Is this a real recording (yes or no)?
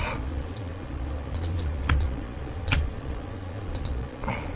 no